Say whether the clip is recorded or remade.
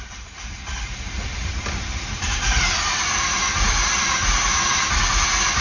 recorded